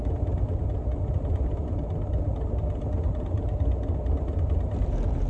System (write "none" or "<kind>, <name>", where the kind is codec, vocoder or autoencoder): none